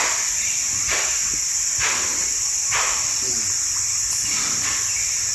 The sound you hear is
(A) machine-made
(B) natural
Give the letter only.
B